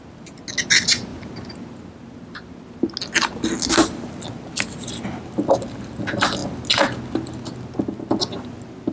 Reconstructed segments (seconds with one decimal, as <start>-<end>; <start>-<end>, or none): none